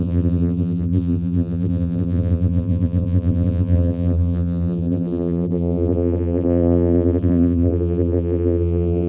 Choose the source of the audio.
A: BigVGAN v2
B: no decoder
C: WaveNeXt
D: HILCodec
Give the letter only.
A